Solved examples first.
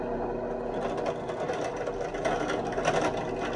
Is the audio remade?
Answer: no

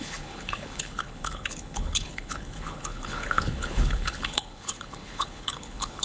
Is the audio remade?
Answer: yes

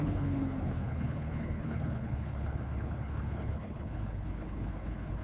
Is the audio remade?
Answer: yes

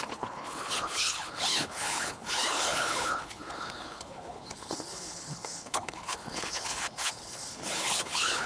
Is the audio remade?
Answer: yes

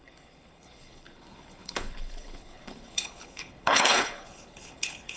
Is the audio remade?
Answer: yes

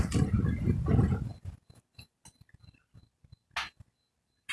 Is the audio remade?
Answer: no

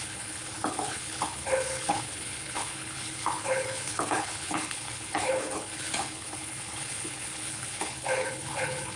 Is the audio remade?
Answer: yes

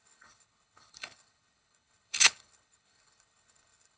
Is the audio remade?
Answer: yes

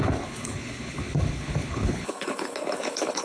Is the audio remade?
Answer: yes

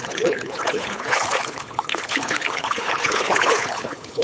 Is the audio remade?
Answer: yes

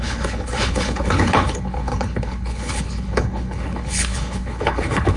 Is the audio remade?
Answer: yes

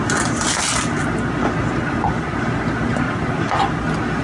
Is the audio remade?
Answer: no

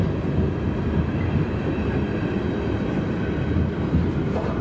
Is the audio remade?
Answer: no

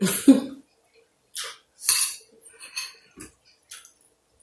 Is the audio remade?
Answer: no